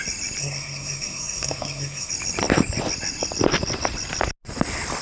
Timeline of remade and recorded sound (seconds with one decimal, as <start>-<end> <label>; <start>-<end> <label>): 0.0-0.4 recorded; 0.4-2.1 remade; 2.1-5.0 recorded